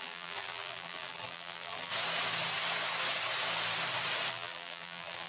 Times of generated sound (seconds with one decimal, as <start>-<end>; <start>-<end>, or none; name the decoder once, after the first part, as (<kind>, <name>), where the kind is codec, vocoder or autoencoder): 0.0-1.9 (vocoder, BigVGAN v2); 4.3-5.3